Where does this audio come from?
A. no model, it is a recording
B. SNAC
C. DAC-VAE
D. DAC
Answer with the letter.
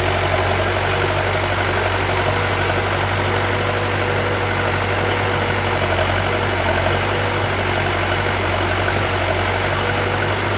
A